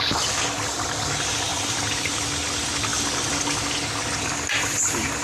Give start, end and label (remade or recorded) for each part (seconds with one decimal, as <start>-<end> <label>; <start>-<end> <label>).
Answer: 0.0-1.5 recorded; 1.5-2.2 remade; 2.2-5.2 recorded